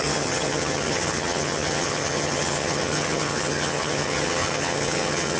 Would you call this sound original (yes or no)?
no